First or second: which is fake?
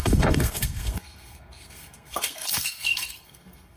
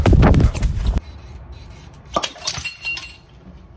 first